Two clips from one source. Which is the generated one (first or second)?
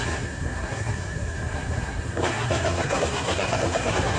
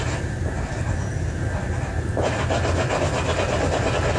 first